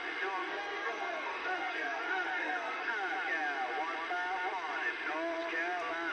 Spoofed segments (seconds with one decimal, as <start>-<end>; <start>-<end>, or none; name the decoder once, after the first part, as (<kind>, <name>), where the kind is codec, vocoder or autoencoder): 0.4-2.9 (codec, SNAC)